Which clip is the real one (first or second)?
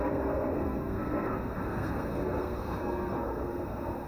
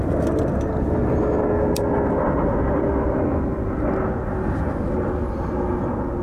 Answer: second